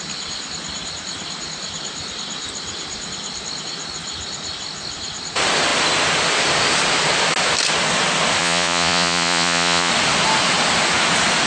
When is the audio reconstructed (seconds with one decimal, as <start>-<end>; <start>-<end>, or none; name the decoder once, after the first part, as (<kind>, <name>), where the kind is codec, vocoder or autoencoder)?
8.4-9.9 (vocoder, Vocos)